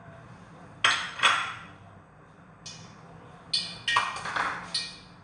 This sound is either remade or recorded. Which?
recorded